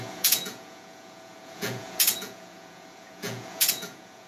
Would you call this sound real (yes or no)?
no